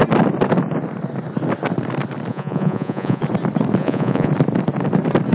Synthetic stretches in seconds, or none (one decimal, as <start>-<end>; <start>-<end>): 2.3-3.2; 3.8-4.3